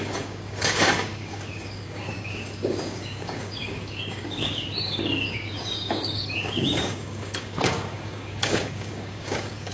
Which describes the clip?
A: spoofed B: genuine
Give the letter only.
A